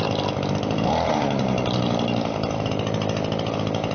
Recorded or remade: recorded